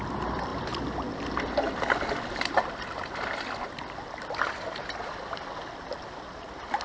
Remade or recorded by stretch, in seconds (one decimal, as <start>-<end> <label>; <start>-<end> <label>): 0.0-6.8 recorded